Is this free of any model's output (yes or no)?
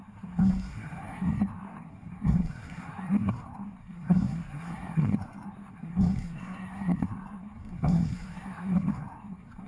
no